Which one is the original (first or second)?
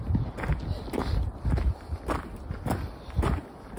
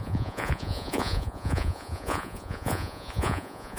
first